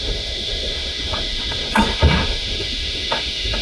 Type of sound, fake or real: fake